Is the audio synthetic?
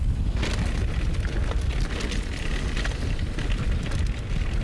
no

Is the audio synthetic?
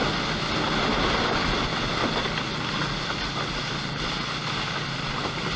no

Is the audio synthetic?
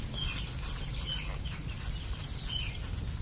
no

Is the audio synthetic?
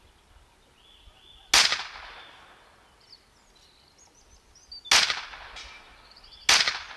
no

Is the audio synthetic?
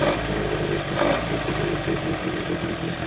no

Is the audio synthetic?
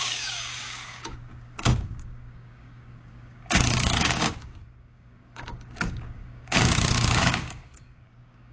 yes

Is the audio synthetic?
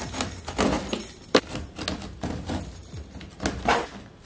no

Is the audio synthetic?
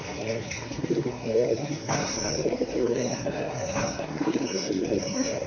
yes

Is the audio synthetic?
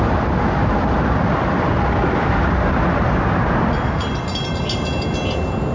no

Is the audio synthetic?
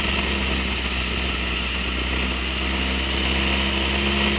no